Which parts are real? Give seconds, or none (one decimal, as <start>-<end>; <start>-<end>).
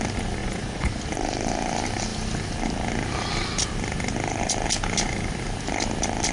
0.0-0.4; 0.9-6.3